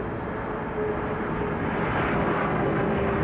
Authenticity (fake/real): real